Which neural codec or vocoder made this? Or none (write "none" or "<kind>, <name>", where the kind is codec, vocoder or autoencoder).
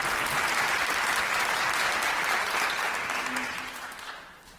none